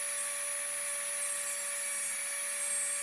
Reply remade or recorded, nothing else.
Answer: recorded